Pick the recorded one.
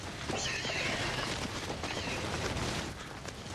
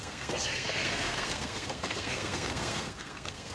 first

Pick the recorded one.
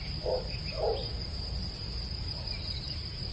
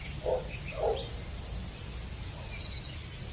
second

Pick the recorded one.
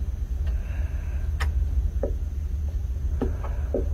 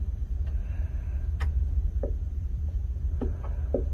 first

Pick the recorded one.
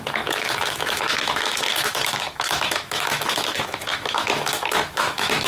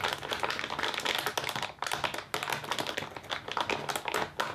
second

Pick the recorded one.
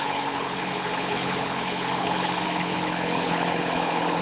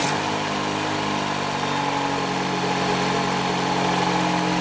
second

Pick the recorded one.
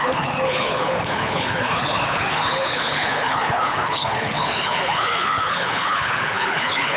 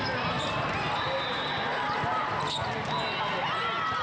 second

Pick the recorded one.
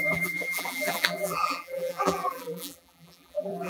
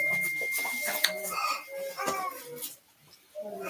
second